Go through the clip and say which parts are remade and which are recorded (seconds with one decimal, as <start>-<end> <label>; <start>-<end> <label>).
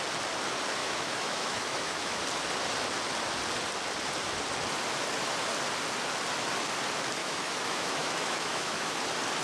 0.0-0.8 recorded; 0.8-2.2 remade; 2.2-7.2 recorded; 7.2-8.9 remade; 8.9-9.4 recorded